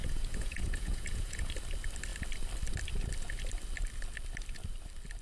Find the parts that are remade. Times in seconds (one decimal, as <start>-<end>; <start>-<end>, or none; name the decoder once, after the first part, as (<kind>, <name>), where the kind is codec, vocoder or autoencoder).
0.0-1.5 (vocoder, Vocos)